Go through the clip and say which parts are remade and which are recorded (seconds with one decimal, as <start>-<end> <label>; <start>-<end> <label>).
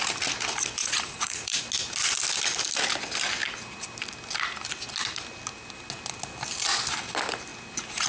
0.0-0.8 recorded; 0.8-1.6 remade; 1.6-8.1 recorded